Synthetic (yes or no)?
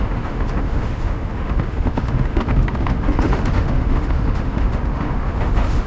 yes